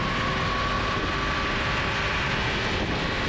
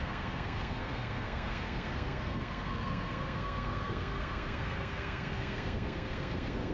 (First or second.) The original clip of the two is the first